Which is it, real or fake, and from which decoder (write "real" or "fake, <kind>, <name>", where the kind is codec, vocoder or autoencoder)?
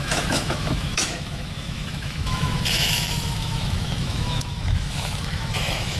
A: fake, autoencoder, DAC-VAE